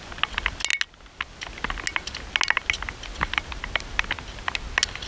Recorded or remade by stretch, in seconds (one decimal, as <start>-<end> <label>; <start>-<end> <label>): 0.0-5.1 recorded